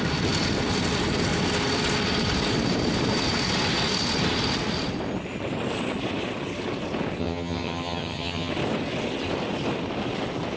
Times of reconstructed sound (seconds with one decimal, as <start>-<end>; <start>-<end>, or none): 7.2-8.5

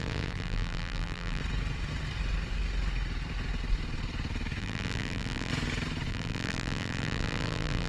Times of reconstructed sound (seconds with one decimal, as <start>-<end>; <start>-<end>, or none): 0.0-1.4; 4.6-5.5; 6.1-7.9

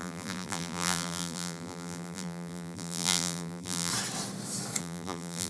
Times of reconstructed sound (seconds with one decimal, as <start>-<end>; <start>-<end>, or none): 0.0-3.9; 4.8-5.5

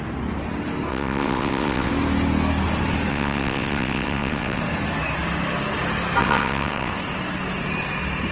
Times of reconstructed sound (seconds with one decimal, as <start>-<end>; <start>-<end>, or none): 0.9-1.9; 3.1-4.6; 6.2-6.9